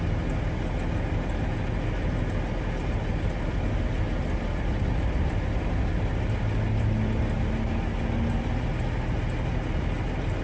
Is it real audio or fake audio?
real